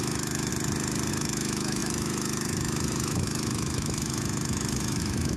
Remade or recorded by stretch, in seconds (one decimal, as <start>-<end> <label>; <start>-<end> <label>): 0.0-0.5 remade; 0.5-1.1 recorded; 1.1-5.4 remade